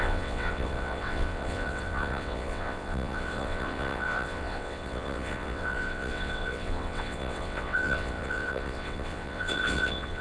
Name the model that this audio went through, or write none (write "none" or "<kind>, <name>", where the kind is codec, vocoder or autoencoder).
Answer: vocoder, WaveNeXt